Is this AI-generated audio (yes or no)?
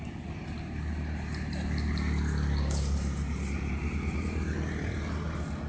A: no